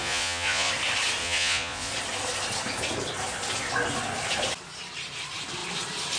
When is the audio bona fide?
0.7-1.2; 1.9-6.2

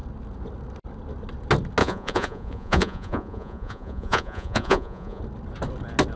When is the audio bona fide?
0.0-1.8; 5.2-6.2

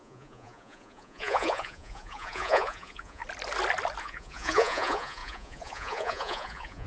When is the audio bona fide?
3.2-4.0

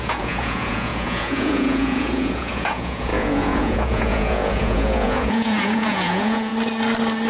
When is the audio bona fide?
6.5-7.3

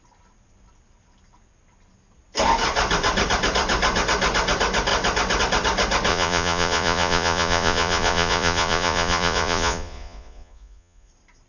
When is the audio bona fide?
0.0-6.1; 11.1-11.5

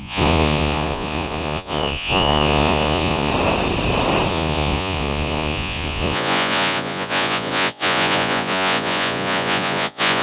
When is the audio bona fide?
3.3-4.3

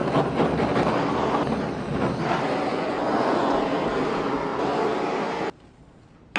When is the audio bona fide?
0.0-2.7; 3.6-6.4

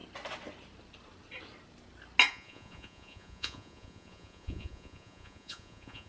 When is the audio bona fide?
0.0-2.3